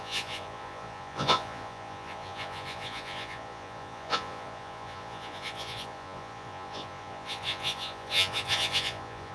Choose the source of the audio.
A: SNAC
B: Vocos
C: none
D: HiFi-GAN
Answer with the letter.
B